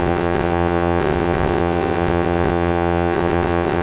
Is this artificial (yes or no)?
yes